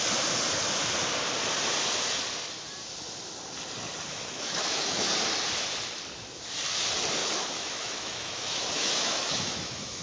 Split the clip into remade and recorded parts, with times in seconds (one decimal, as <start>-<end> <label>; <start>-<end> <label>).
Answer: 0.0-4.1 recorded; 4.1-5.1 remade; 5.1-7.2 recorded; 7.2-10.0 remade